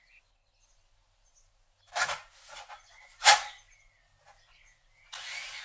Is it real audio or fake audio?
real